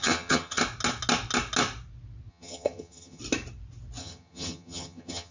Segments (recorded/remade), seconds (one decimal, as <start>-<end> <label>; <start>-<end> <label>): 0.0-0.6 remade; 0.6-2.3 recorded; 2.3-3.2 remade; 3.2-4.0 recorded; 4.0-5.3 remade